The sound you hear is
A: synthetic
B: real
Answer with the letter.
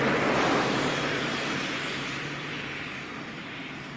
A